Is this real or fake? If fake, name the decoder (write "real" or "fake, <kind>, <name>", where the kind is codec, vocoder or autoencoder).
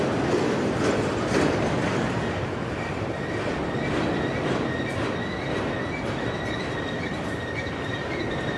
real